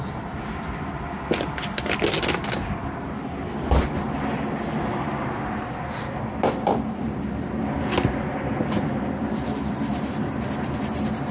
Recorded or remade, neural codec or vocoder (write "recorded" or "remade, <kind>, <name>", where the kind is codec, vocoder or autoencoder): remade, vocoder, BigVGAN v2